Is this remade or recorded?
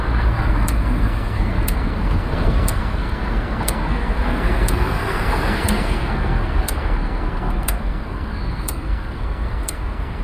remade